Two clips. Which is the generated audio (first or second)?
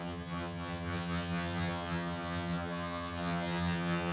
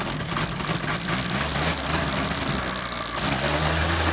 first